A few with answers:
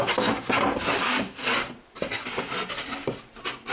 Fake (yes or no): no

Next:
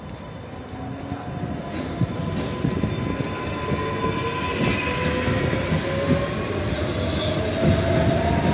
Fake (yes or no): no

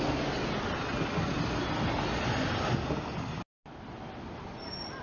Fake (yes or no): no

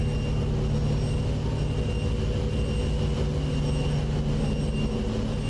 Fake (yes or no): no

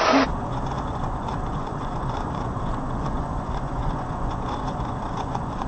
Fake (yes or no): yes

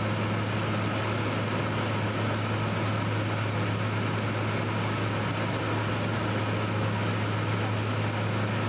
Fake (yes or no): no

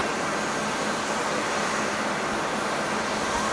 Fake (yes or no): no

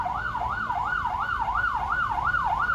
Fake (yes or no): no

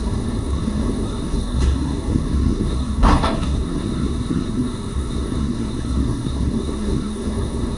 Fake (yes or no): yes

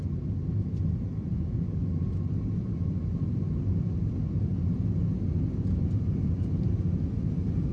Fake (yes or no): no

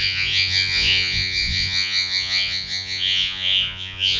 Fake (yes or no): yes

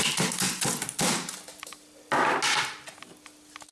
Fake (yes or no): no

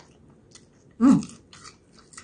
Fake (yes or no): no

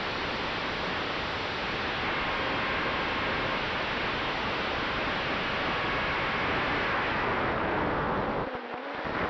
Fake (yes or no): no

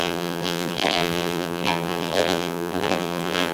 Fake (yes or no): yes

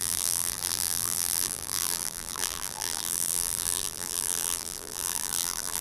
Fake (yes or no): yes